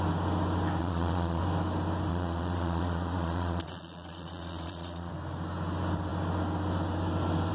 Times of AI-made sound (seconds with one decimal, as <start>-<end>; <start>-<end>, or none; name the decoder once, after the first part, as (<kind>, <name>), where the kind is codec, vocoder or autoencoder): 0.8-1.4 (vocoder, Vocos); 2.1-5.1

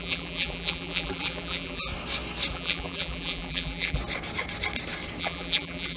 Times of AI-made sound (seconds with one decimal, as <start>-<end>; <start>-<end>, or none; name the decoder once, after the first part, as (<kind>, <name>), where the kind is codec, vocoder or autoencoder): 0.0-1.9 (vocoder, BigVGAN v2); 2.5-4.0; 5.2-6.0

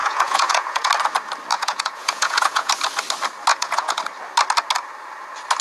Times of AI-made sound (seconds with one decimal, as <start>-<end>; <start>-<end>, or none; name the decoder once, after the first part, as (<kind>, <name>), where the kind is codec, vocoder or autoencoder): 0.0-0.9 (vocoder, Vocos); 1.5-2.7; 3.5-4.0

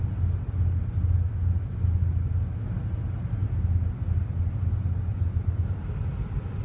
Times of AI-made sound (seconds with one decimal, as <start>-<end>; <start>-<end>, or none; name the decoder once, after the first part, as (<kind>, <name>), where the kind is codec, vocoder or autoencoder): 5.1-6.6 (vocoder, BigVGAN v2)

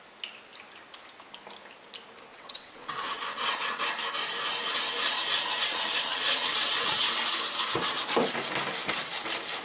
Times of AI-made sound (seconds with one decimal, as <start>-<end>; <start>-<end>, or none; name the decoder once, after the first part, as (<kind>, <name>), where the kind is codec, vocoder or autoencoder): 2.3-3.8 (vocoder, WaveNeXt); 5.6-7.1

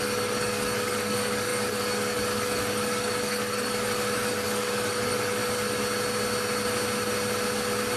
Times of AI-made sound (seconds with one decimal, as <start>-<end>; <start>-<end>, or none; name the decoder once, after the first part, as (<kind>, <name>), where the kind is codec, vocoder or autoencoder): 0.0-5.4 (codec, DAC)